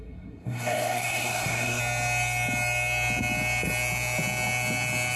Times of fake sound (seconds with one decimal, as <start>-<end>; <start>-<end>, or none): 0.0-1.8